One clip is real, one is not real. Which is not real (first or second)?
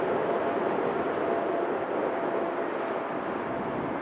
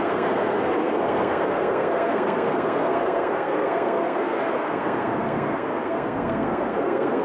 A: second